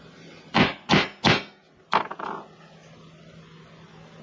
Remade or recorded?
recorded